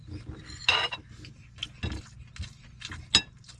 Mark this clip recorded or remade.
recorded